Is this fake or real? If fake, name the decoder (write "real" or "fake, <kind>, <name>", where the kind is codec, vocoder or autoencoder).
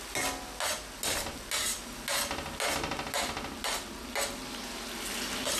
real